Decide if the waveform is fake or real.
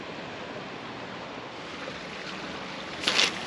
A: real